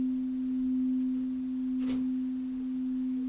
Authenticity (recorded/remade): recorded